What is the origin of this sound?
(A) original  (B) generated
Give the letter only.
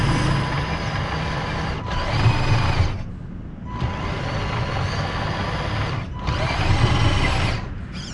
A